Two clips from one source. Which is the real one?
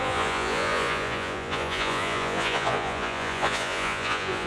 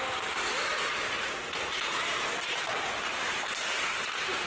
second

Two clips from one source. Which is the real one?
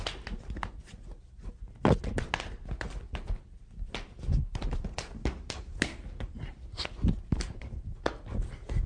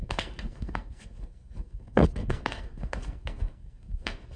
first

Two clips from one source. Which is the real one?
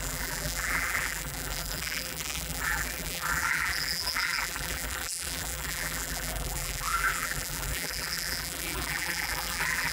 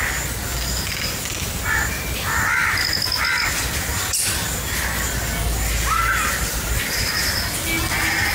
second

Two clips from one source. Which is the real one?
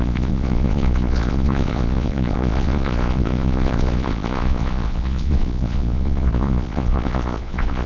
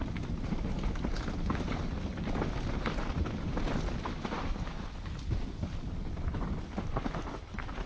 second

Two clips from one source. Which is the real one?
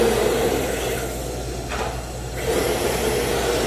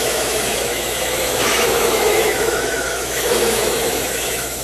first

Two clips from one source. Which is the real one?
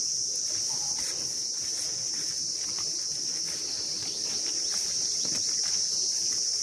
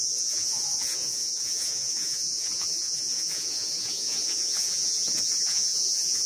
first